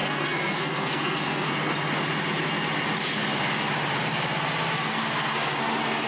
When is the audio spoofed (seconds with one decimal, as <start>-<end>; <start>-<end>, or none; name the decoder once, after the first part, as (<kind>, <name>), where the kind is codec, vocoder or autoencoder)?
0.0-1.5 (codec, SNAC); 4.9-5.6